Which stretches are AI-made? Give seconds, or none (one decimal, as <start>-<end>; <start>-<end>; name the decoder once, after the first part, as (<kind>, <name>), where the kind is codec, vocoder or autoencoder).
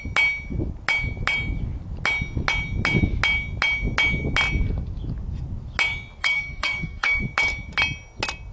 6.2-7.2 (codec, SNAC)